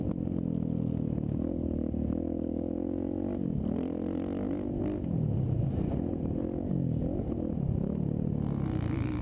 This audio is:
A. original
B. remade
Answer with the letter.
A